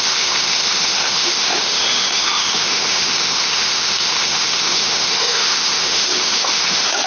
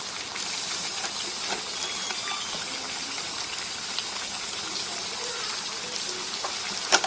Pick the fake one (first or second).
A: first